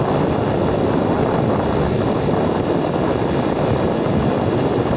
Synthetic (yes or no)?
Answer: no